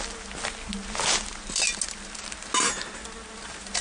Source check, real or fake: real